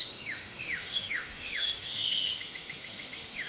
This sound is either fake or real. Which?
fake